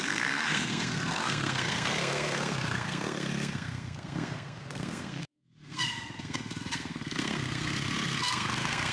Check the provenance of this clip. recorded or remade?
remade